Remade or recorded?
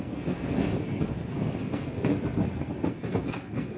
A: remade